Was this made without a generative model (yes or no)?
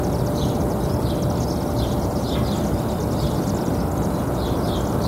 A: yes